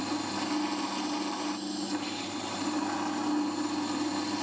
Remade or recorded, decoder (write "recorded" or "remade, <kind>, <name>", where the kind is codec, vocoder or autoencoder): recorded